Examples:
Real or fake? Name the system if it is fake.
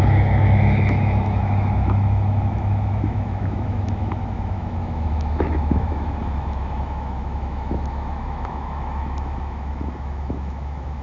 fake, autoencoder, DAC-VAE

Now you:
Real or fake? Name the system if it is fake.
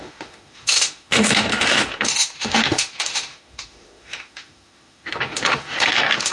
fake, autoencoder, DAC-VAE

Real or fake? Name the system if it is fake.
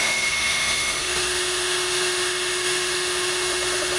fake, autoencoder, DAC-VAE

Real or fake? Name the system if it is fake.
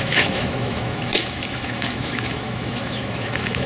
fake, autoencoder, DAC-VAE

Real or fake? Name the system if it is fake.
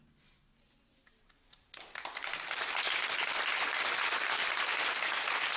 real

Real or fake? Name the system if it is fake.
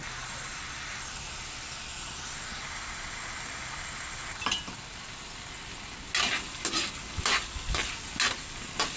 real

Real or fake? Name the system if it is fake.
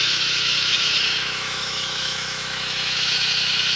fake, autoencoder, DAC-VAE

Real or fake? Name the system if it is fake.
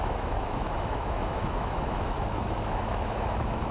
fake, autoencoder, DAC-VAE